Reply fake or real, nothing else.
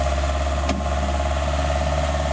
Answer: real